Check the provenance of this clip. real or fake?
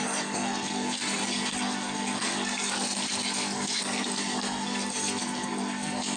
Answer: fake